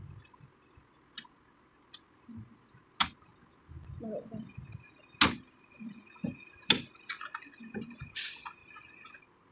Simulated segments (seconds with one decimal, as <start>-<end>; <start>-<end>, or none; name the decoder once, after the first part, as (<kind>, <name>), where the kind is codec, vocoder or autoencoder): none